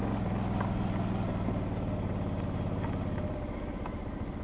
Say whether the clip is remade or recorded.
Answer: recorded